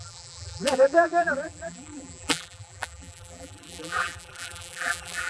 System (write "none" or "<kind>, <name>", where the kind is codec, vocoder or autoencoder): vocoder, BigVGAN v2